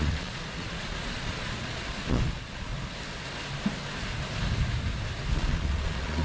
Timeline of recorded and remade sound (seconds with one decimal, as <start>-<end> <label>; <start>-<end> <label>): 0.0-2.7 remade; 2.7-5.3 recorded; 5.3-6.2 remade